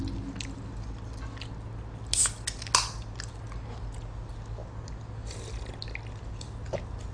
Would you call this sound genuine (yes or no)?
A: yes